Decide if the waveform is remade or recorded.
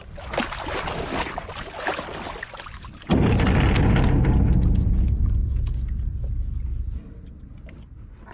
recorded